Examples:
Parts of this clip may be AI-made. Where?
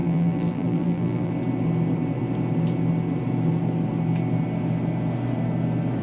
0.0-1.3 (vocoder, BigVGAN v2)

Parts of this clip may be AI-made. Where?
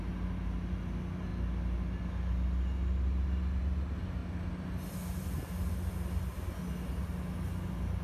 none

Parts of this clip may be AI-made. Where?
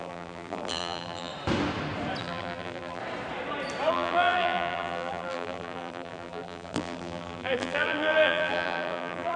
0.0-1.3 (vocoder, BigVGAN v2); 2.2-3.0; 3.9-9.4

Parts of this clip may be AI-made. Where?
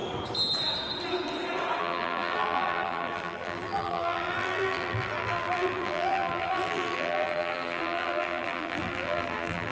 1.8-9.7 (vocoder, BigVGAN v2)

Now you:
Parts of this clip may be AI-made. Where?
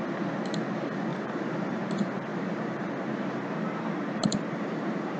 1.1-1.8 (vocoder, BigVGAN v2); 2.3-2.9; 4.2-5.2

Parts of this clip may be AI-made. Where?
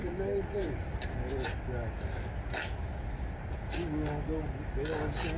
0.0-1.3 (vocoder, BigVGAN v2)